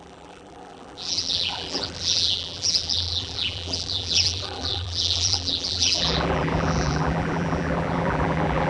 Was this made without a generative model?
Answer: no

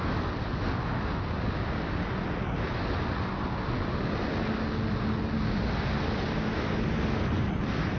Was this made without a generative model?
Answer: yes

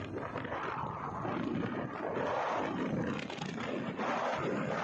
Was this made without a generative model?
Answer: yes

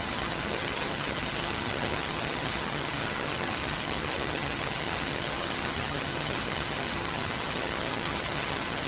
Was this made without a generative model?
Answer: no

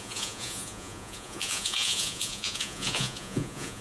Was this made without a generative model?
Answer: no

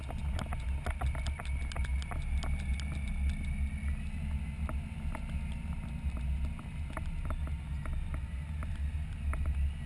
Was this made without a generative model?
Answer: yes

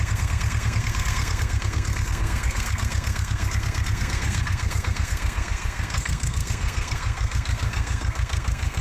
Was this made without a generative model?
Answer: no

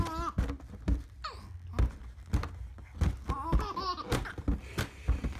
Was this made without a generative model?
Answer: yes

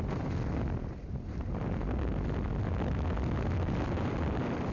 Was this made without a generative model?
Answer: yes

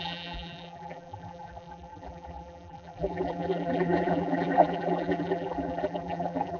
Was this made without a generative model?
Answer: no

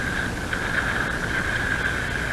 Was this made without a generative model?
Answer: yes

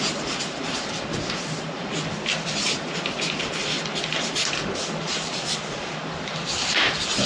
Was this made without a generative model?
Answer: no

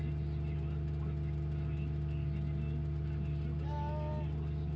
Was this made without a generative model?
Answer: yes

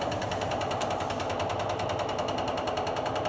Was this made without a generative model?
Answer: yes